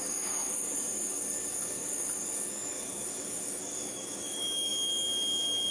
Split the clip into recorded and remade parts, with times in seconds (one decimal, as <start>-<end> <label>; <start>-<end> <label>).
0.0-5.7 remade